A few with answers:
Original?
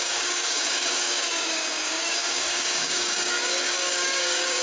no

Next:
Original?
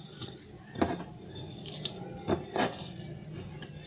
yes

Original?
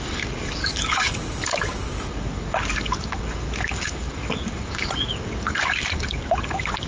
no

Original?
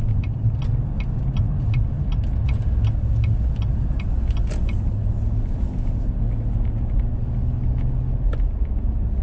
yes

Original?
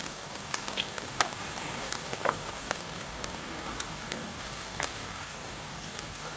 no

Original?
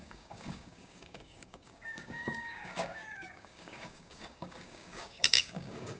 no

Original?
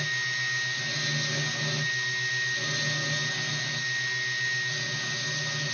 yes